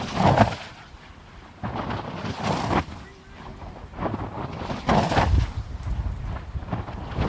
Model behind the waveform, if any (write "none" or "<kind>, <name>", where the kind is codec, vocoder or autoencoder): none